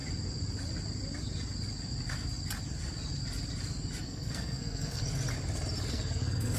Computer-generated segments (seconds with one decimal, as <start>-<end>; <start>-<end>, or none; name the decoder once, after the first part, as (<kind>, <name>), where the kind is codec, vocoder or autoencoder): 4.0-5.0 (codec, SNAC); 5.9-6.6